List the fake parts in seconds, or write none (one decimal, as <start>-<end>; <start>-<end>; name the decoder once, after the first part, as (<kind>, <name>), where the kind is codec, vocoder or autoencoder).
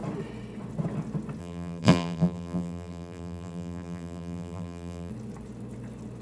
1.4-5.1 (vocoder, BigVGAN v2)